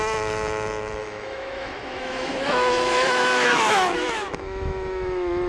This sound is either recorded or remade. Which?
remade